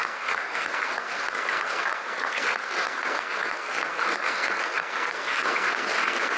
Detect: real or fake fake